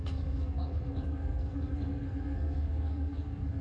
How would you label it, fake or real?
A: fake